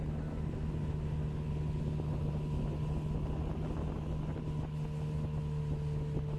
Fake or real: real